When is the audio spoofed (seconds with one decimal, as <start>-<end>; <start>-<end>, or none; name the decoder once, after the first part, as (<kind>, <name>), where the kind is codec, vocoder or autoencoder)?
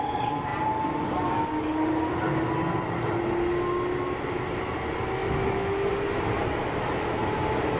5.2-5.9 (autoencoder, DAC-VAE); 6.6-7.2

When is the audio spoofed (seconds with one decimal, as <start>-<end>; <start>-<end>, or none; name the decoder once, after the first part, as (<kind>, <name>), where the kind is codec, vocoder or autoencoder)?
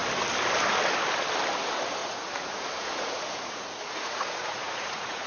2.0-5.3 (vocoder, Vocos)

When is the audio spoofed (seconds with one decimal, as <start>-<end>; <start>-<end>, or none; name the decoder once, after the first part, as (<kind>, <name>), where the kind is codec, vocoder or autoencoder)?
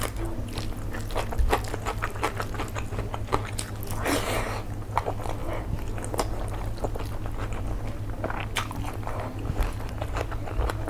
none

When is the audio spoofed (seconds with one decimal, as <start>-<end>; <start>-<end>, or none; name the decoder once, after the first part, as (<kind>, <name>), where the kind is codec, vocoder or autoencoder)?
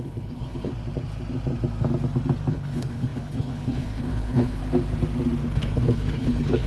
0.0-0.7 (codec, HILCodec); 2.5-4.6; 5.4-6.7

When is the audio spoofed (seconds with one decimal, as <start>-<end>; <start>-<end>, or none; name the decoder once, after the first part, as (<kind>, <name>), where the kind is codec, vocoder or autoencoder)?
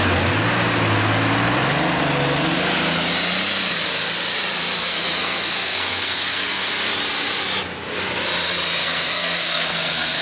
4.8-6.7 (codec, SNAC); 8.8-10.2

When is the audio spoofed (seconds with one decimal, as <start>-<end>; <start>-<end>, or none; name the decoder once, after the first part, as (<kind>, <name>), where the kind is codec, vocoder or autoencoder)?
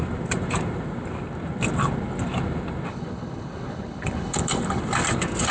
2.9-4.8 (codec, HILCodec)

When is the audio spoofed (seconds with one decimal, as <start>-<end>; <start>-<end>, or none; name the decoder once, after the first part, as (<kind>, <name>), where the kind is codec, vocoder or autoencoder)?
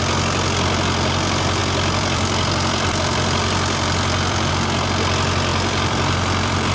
1.6-4.5 (vocoder, BigVGAN v2); 5.5-6.7